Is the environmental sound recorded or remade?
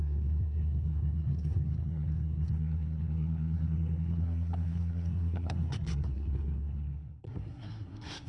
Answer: remade